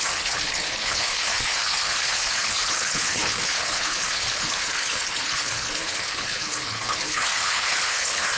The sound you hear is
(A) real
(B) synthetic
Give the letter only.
B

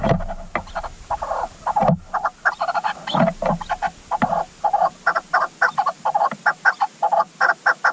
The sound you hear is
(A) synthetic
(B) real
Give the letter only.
B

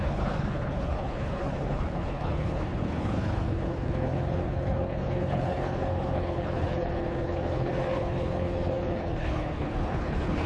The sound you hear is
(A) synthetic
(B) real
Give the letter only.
A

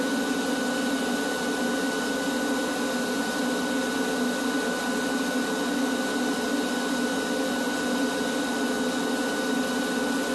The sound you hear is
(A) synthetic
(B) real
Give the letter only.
B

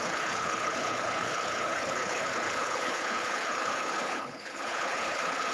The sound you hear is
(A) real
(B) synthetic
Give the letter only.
B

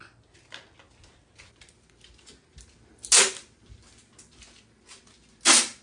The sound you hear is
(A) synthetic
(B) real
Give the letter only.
B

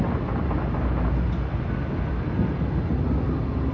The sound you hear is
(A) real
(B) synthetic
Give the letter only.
A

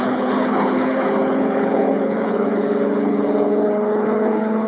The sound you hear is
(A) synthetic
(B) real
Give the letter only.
A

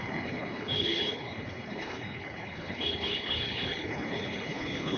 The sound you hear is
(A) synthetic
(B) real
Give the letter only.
A